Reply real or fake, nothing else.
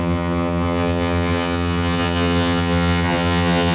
fake